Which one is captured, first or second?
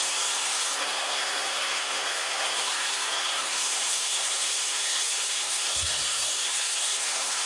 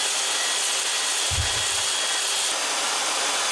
second